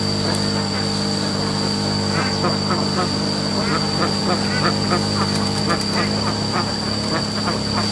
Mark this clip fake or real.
real